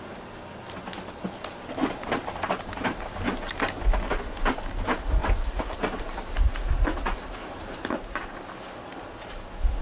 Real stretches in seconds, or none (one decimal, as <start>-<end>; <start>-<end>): 0.0-7.4; 7.9-9.8